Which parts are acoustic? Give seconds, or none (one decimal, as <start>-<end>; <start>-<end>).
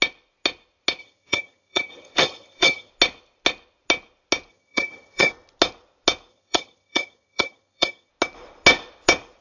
0.0-1.0; 2.9-4.5; 5.3-6.3; 8.1-9.4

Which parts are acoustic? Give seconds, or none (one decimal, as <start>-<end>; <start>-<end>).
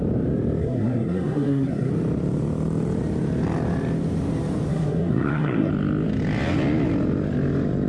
0.0-0.6; 1.9-4.7; 5.7-7.9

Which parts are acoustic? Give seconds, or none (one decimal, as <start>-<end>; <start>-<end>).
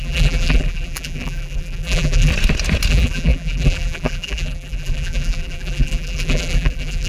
2.3-2.9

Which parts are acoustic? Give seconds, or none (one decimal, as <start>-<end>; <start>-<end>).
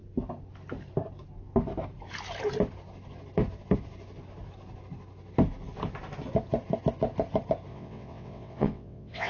0.0-7.7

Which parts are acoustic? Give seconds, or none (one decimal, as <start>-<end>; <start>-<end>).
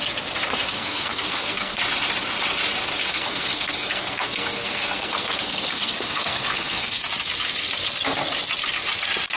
0.0-0.7; 1.8-3.0; 7.0-9.4